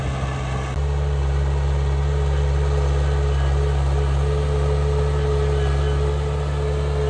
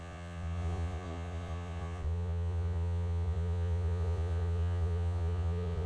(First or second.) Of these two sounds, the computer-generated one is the second